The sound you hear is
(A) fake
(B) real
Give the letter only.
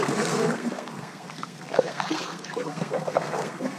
A